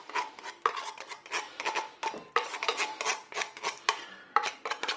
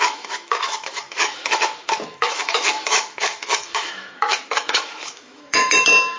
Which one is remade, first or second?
second